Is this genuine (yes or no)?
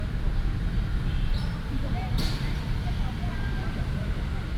no